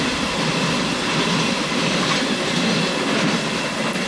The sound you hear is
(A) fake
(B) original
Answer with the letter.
B